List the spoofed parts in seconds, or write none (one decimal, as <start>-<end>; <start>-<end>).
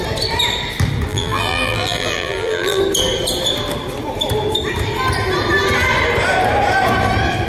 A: 1.1-2.8